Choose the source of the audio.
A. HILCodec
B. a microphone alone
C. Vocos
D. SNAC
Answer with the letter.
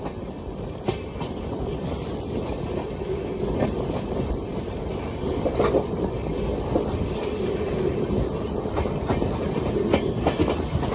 B